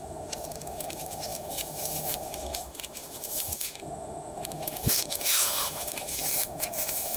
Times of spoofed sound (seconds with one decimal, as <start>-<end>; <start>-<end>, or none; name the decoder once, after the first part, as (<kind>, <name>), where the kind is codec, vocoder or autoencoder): 0.0-7.2 (autoencoder, DAC-VAE)